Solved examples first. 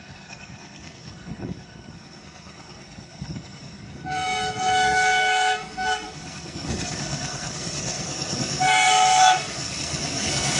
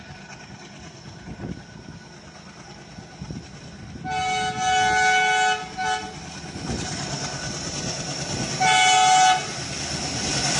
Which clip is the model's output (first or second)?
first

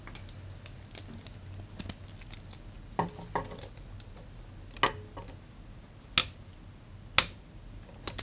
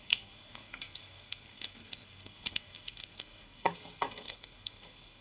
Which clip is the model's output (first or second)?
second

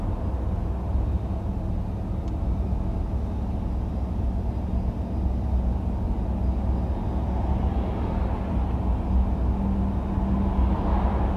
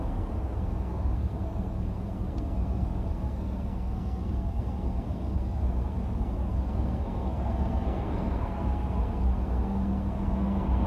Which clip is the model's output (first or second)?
second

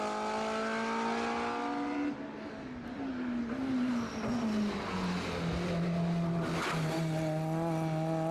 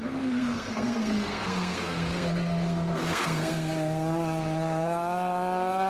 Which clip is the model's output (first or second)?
second